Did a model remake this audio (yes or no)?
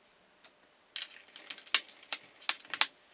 no